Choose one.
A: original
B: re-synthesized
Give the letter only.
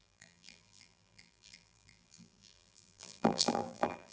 B